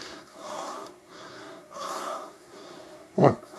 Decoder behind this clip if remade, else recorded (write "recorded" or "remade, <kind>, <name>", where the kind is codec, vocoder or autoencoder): remade, codec, SNAC